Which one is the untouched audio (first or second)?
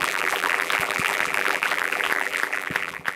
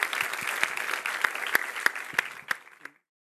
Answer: second